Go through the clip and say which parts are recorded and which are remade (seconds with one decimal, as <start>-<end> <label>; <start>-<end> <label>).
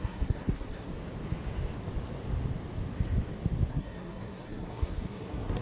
0.0-0.9 remade; 0.9-3.7 recorded; 3.7-5.6 remade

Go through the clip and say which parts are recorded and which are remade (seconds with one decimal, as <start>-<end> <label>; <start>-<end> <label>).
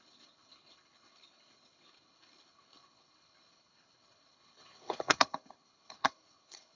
0.0-6.8 remade